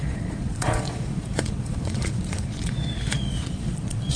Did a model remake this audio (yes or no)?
yes